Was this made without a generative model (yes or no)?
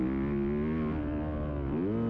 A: yes